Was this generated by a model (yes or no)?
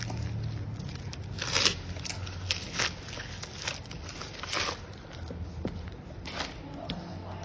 no